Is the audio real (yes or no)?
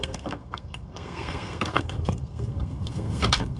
no